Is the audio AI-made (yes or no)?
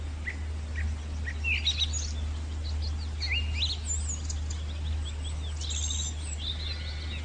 no